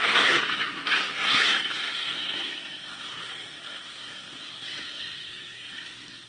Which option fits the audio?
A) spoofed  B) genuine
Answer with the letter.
A